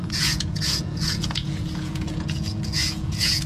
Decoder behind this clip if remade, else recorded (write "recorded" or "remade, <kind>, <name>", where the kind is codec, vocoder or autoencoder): remade, vocoder, Vocos